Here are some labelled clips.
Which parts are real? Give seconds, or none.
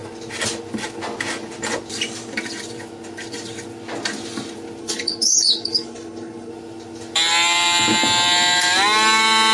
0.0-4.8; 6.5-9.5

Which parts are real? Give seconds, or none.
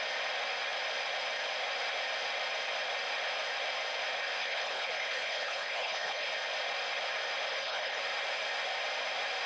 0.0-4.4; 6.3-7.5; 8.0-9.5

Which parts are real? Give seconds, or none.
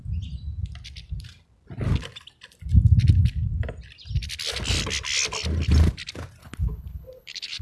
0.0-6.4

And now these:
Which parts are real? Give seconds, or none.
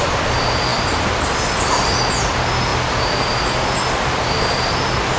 0.0-5.2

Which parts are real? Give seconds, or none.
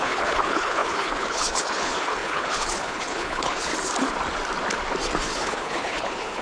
3.7-5.2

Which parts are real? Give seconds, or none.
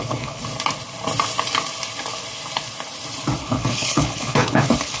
0.4-3.4